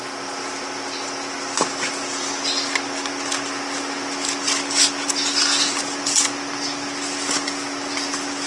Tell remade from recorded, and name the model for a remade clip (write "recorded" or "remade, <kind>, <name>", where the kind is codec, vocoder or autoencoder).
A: recorded